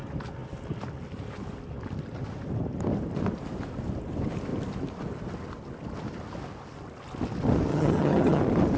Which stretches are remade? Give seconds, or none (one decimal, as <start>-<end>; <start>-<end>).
7.7-8.4